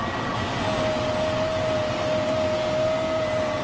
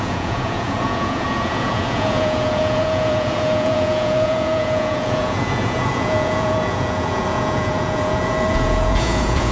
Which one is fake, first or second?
second